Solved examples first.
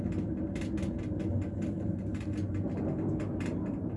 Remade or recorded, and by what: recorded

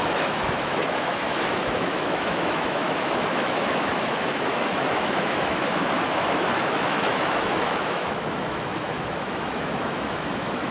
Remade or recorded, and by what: remade, autoencoder, DAC-VAE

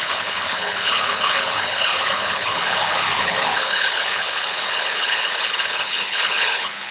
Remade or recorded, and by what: remade, codec, HILCodec